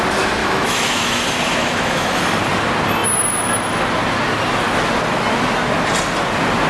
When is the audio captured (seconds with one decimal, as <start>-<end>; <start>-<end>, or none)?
0.0-0.4; 1.2-1.6; 2.2-6.7